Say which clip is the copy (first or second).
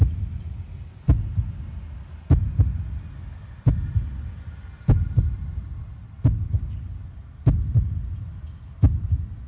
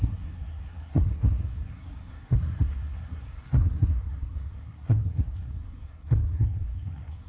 second